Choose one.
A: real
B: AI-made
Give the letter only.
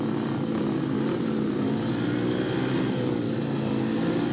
A